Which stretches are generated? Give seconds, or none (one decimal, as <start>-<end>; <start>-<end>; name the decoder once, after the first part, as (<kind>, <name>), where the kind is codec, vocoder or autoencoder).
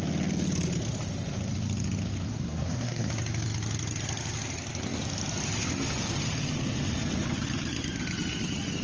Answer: 2.3-3.1 (codec, SNAC)